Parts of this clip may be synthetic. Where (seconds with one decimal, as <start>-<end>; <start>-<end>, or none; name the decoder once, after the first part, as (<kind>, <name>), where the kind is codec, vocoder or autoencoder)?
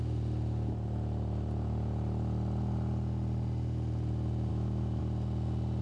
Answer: 4.5-5.0 (autoencoder, DAC-VAE)